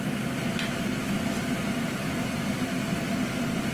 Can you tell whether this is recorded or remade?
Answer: recorded